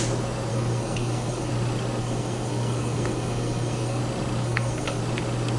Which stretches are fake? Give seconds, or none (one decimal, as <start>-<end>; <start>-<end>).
0.5-1.5; 2.0-4.0; 4.4-5.0